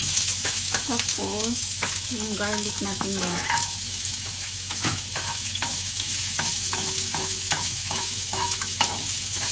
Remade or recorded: remade